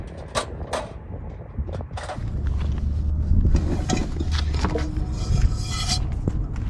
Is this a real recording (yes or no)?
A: yes